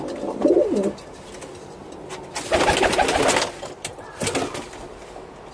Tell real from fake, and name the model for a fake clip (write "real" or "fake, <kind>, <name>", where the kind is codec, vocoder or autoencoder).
real